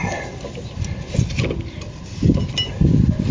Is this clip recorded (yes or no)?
yes